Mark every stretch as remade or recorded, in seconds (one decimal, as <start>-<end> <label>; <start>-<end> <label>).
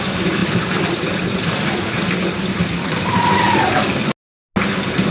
0.0-0.4 recorded; 0.4-3.5 remade; 3.5-5.1 recorded